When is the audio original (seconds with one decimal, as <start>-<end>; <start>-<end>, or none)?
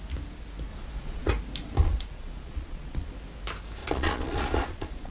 0.0-0.7; 1.3-1.8; 3.1-3.8